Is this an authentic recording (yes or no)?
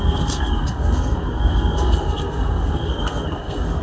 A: no